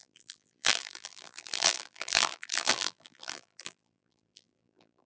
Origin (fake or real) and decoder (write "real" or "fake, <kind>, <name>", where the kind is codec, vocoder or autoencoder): fake, vocoder, BigVGAN v2